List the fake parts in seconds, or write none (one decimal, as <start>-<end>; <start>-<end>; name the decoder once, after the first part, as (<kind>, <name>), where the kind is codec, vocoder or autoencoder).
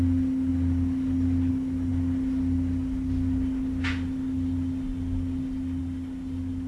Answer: none